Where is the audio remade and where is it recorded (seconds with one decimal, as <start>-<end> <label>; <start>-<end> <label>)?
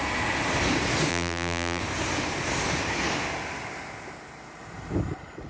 0.0-1.1 recorded; 1.1-1.8 remade; 1.8-5.5 recorded